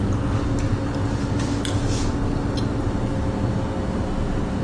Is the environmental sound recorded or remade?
recorded